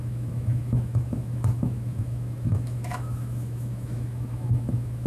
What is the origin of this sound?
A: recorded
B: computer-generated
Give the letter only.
B